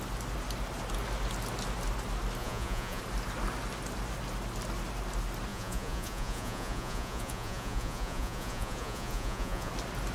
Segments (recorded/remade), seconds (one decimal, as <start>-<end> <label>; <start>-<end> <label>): 0.0-2.4 recorded; 2.4-3.0 remade; 3.0-5.5 recorded; 5.5-9.7 remade; 9.7-10.1 recorded